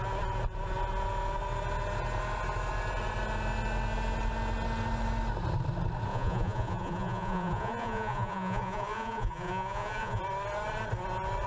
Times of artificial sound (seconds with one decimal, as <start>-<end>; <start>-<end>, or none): 6.1-10.2